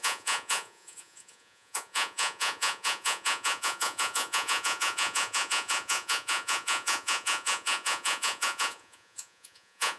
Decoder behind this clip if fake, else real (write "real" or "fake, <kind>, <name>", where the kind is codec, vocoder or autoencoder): fake, vocoder, Vocos